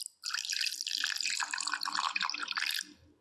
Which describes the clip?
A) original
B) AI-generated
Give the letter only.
A